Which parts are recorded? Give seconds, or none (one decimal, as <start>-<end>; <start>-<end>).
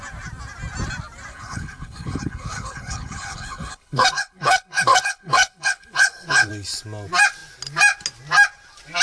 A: 0.0-1.3; 6.5-9.0